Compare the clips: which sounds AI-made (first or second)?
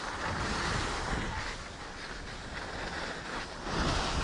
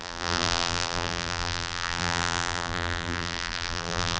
second